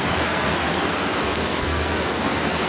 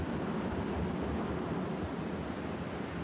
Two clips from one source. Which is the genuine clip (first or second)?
second